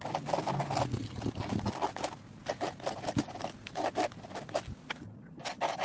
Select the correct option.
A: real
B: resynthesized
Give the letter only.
A